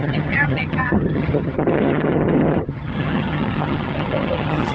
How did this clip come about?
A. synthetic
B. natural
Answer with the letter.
A